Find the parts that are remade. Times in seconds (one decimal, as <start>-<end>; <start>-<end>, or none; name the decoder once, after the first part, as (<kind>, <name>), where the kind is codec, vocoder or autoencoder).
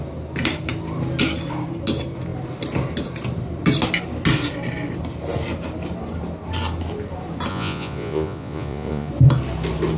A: 7.5-9.1 (vocoder, Vocos)